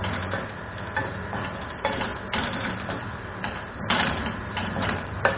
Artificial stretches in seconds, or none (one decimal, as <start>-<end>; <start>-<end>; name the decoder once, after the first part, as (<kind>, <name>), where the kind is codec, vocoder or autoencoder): 0.0-2.1 (vocoder, BigVGAN v2); 2.7-5.4

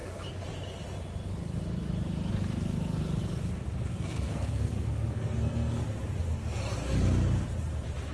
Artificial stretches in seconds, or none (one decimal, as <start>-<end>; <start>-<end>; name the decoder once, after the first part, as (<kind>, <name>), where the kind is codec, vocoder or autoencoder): 3.9-5.8 (codec, SNAC)

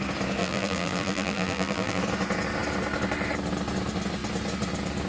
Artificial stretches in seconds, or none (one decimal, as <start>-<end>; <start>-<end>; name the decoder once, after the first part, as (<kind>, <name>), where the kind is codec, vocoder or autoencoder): 0.4-2.0 (vocoder, BigVGAN v2)

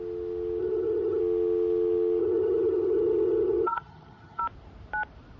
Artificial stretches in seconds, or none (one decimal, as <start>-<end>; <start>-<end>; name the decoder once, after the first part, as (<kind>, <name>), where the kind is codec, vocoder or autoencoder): 0.6-1.2 (vocoder, HiFi-GAN); 2.2-4.4